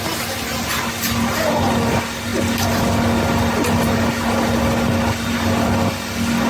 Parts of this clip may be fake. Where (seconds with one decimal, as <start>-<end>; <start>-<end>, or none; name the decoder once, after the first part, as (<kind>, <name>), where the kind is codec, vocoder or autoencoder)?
none